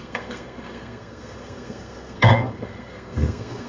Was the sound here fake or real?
fake